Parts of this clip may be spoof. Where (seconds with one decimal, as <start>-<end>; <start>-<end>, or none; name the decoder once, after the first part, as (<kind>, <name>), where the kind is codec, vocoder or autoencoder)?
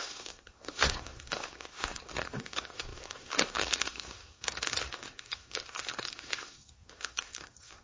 0.0-7.8 (codec, SNAC)